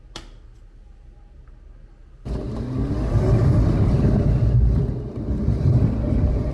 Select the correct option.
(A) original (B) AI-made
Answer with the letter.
A